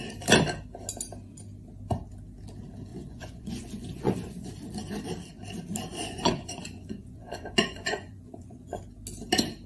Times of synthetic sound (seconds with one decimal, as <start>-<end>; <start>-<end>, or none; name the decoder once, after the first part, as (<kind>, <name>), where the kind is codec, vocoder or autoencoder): 2.9-4.5 (vocoder, Vocos); 5.9-8.8